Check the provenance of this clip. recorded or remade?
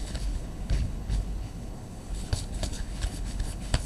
remade